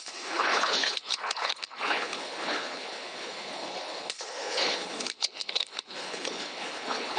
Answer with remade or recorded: remade